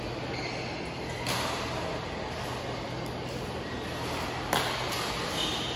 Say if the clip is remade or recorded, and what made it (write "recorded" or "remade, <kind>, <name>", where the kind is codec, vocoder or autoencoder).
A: recorded